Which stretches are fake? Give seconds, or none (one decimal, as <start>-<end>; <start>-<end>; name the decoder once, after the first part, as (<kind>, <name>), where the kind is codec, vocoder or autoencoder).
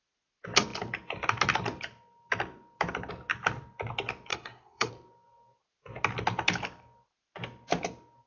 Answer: 4.3-4.9 (codec, SNAC)